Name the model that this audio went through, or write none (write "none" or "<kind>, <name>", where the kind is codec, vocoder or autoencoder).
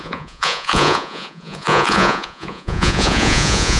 vocoder, Vocos